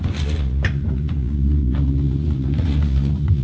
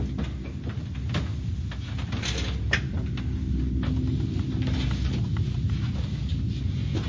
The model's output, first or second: first